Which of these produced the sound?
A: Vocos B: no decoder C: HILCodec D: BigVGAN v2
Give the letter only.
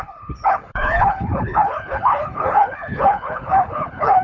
C